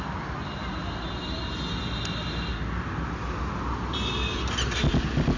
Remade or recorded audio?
recorded